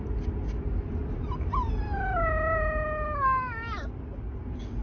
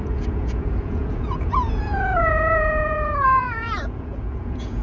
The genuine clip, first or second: first